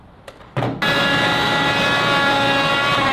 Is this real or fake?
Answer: real